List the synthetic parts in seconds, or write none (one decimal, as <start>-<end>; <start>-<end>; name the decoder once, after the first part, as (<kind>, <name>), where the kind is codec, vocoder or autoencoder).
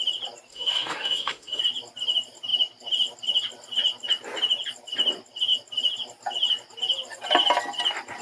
0.5-1.6 (autoencoder, DAC-VAE)